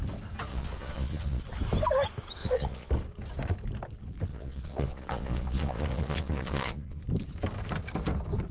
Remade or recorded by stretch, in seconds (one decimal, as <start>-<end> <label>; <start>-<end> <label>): 0.0-0.5 recorded; 0.5-1.4 remade; 1.4-2.4 recorded; 2.4-2.9 remade; 2.9-4.3 recorded; 4.3-7.0 remade; 7.0-8.5 recorded

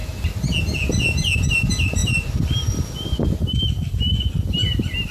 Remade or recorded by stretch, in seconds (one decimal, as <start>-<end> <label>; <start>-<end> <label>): 0.0-5.1 recorded

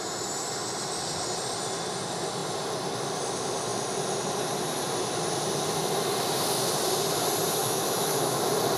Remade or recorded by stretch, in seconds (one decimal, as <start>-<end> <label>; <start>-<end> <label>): 0.0-7.6 recorded; 7.6-8.4 remade; 8.4-8.8 recorded

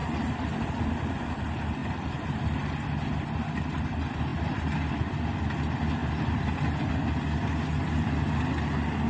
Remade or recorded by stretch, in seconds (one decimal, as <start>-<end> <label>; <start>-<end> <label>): 0.0-1.8 recorded; 1.8-2.4 remade; 2.4-6.0 recorded; 6.0-6.9 remade; 6.9-9.1 recorded